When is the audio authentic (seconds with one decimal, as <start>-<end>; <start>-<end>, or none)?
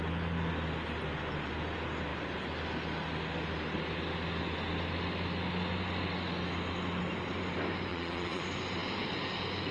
0.0-7.9; 8.4-9.7